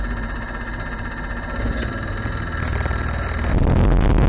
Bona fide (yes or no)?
yes